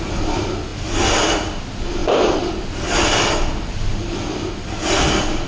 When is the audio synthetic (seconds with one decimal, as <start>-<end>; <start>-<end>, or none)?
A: none